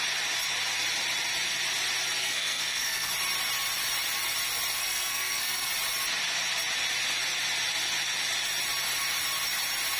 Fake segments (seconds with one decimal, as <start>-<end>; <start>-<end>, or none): 2.2-3.1; 4.8-5.7